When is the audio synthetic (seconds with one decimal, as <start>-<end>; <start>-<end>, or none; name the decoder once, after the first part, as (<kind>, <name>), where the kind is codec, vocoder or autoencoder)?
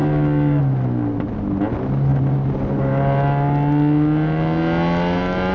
0.0-0.6 (codec, DAC)